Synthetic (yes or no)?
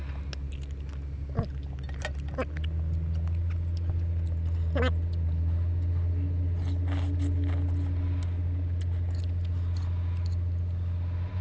no